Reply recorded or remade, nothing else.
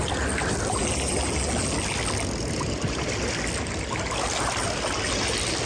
recorded